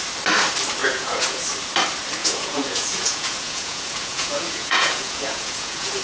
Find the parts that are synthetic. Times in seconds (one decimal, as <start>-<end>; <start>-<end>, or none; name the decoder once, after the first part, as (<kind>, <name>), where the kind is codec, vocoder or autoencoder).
0.8-1.4 (vocoder, Vocos); 2.2-6.0